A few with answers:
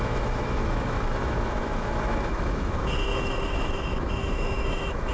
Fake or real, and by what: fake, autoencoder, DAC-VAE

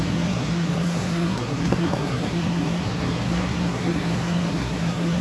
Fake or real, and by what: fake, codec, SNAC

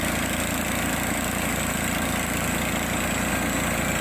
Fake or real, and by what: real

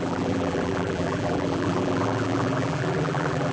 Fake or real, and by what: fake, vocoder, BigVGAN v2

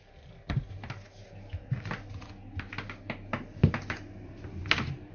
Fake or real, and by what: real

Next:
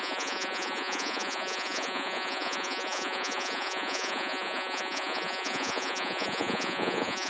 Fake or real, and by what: fake, vocoder, Vocos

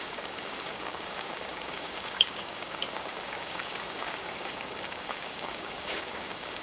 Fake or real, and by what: fake, codec, DAC